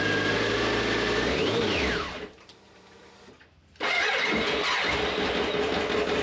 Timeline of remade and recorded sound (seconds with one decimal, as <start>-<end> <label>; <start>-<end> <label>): 0.0-1.2 recorded; 1.2-3.1 remade; 3.1-6.2 recorded